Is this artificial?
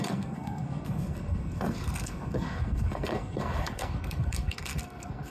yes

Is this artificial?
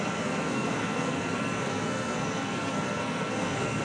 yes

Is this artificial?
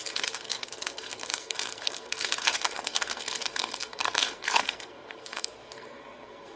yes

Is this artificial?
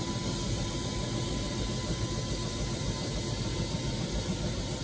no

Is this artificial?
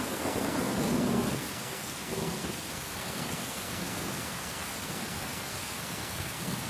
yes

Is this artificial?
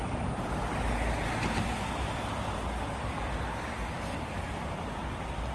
no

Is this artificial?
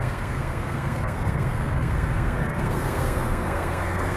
yes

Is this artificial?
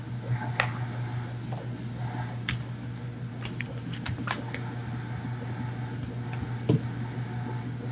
no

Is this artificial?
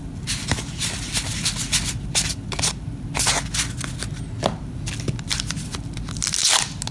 no